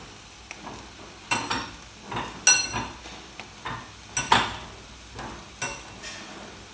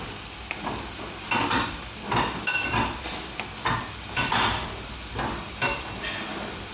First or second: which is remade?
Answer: second